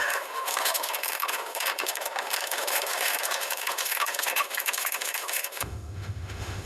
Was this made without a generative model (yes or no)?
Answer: no